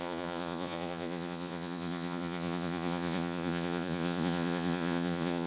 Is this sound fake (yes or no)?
yes